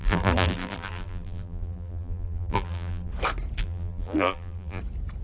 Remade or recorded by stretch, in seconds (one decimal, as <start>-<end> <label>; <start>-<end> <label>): 0.0-3.1 remade; 3.1-3.6 recorded; 3.6-4.8 remade; 4.8-5.2 recorded